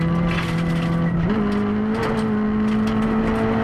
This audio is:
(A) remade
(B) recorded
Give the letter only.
B